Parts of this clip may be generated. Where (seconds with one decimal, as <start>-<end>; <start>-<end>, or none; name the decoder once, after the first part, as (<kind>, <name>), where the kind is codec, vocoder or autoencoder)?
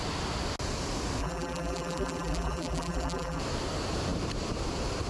1.2-3.4 (vocoder, BigVGAN v2)